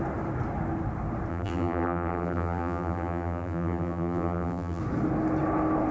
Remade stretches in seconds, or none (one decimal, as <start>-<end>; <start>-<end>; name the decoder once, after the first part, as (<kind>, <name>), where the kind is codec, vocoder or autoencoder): 1.3-4.8 (vocoder, BigVGAN v2)

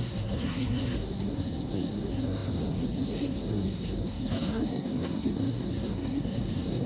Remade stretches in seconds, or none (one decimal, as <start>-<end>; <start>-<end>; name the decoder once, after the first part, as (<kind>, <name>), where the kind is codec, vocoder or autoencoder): 0.0-6.9 (codec, SNAC)

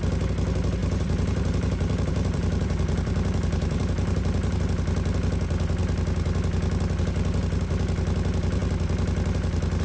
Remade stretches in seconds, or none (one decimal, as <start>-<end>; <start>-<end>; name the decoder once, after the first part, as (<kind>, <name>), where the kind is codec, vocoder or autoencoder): 0.8-4.6 (vocoder, BigVGAN v2)

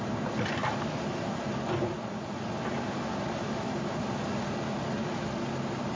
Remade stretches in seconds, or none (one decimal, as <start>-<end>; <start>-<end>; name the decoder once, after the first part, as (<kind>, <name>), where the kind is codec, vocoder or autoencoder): none

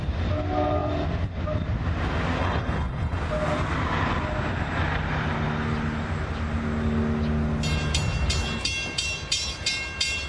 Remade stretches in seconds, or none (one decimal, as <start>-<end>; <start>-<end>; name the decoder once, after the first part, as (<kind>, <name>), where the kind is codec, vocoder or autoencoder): 2.4-3.2 (codec, HILCodec)

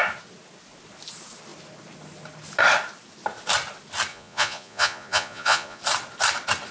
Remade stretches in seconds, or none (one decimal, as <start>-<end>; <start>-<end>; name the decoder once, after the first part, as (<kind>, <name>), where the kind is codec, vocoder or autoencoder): 4.1-5.8 (vocoder, Vocos)

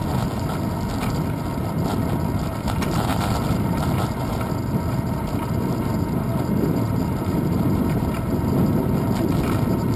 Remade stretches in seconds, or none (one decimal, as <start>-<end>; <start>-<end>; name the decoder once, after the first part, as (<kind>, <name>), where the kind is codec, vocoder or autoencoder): 3.1-4.4 (vocoder, BigVGAN v2)